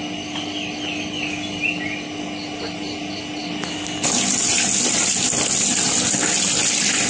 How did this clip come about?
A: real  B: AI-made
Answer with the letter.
A